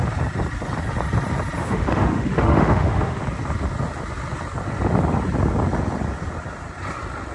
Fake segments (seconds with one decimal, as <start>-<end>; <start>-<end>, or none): 1.6-3.2